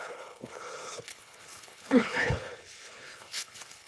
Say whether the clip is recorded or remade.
remade